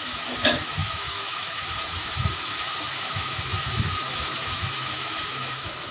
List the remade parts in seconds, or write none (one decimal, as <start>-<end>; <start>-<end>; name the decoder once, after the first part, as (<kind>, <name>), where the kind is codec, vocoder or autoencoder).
0.0-5.9 (autoencoder, DAC-VAE)